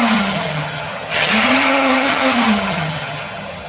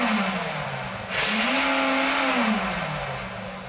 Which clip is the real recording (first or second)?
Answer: second